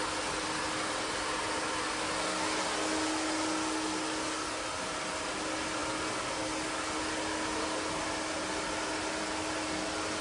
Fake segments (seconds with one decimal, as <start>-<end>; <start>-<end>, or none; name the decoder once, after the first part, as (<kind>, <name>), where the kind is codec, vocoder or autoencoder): none